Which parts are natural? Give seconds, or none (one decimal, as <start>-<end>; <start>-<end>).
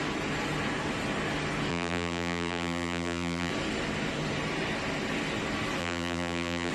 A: 0.0-1.7; 3.5-5.8